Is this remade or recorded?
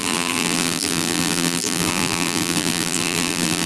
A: remade